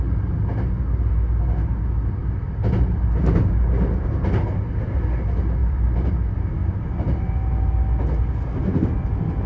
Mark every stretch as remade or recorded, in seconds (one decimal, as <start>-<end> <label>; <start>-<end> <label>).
0.0-5.6 recorded; 5.6-6.1 remade; 6.1-6.6 recorded; 6.6-7.5 remade; 7.5-9.5 recorded